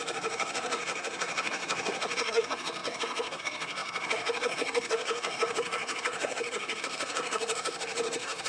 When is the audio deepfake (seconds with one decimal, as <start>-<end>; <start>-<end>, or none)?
0.0-8.5